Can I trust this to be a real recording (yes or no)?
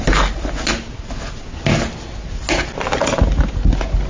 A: yes